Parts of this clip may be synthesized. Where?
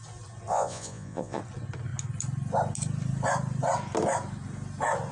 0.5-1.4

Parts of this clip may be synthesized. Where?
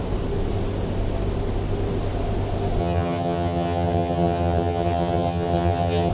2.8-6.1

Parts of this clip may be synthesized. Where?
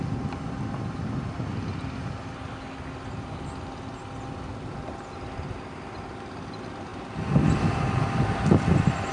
none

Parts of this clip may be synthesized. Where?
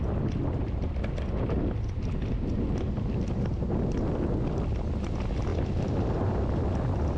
none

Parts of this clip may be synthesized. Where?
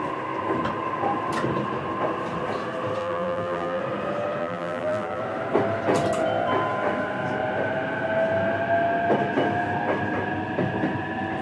3.0-3.8; 4.4-5.2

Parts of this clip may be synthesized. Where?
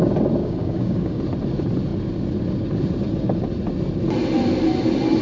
0.4-1.2